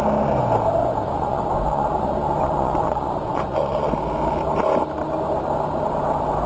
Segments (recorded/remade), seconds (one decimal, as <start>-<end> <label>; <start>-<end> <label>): 0.0-0.8 recorded; 0.8-3.9 remade; 3.9-6.5 recorded